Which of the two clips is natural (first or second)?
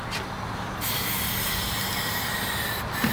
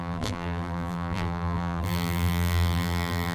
first